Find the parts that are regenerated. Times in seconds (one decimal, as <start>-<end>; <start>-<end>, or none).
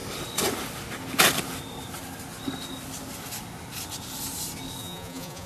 4.8-5.5